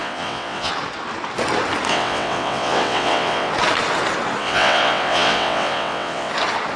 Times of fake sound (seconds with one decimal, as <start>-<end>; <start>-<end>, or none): 0.0-0.7; 1.9-3.5; 4.4-6.3